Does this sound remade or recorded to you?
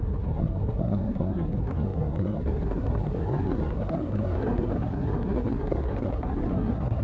remade